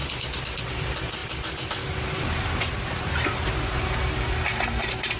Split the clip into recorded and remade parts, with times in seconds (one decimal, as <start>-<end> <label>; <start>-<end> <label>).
0.0-5.2 recorded